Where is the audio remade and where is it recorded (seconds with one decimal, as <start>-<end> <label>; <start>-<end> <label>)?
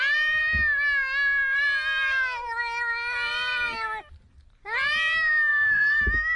0.0-5.5 recorded; 5.5-6.0 remade; 6.0-6.4 recorded